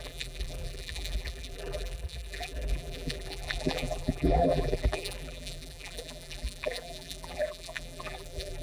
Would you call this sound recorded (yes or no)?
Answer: no